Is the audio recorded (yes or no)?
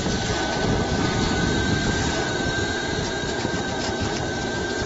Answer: no